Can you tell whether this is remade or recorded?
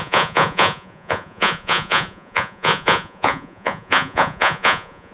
remade